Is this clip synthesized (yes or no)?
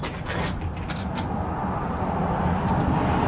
yes